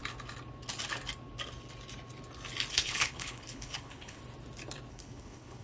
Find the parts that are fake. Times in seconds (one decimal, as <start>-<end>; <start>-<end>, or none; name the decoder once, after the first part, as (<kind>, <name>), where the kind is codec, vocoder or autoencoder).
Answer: 2.7-4.2 (codec, HILCodec); 4.9-5.6